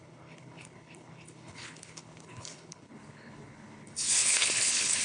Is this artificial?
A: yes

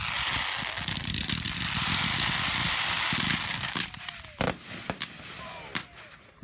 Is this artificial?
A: no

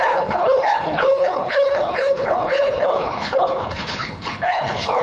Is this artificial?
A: yes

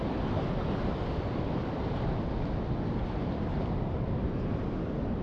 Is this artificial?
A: no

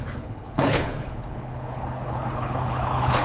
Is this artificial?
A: yes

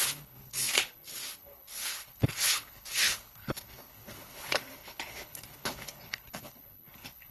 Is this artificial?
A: yes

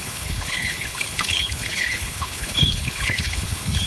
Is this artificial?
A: yes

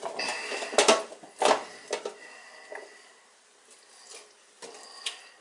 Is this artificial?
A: no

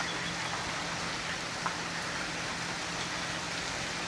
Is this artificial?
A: no